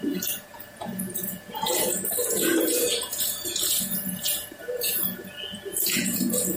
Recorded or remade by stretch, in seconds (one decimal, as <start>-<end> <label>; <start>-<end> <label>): 0.0-6.6 remade